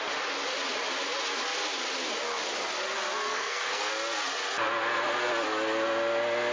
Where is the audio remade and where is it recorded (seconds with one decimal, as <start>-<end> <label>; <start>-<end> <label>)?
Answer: 0.0-3.3 recorded; 3.3-3.9 remade; 3.9-6.5 recorded